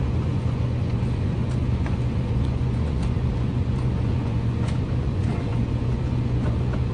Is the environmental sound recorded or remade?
remade